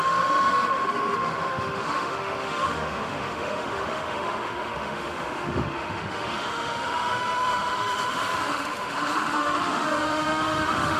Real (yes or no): no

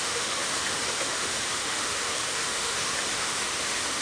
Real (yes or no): no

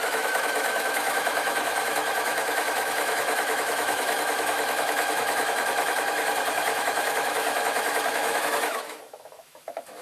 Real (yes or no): no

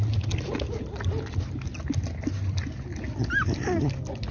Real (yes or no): yes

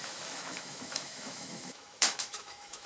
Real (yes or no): no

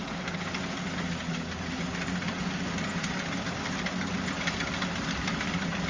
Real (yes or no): yes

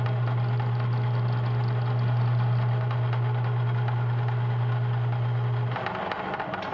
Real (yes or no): yes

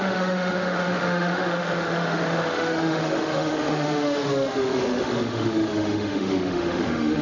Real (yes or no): no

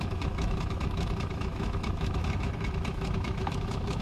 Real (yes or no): no